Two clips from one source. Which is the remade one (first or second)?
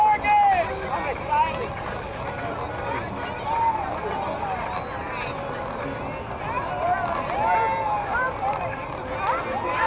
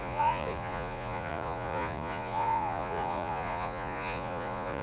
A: second